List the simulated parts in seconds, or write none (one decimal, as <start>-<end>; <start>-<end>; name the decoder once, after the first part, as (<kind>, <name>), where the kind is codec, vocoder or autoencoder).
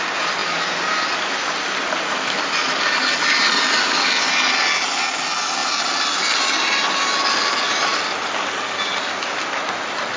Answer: none